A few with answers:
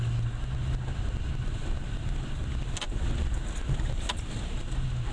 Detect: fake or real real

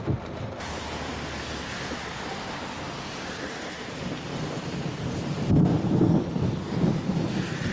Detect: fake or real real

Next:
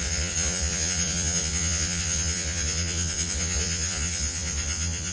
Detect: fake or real fake